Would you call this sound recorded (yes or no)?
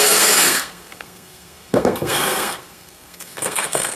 no